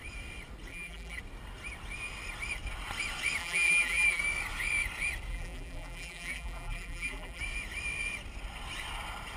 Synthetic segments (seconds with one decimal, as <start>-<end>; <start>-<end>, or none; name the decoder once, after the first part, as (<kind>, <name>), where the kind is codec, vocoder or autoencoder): 0.7-1.2 (vocoder, BigVGAN v2); 3.4-4.2; 5.3-7.4